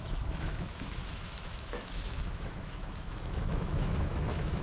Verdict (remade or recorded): remade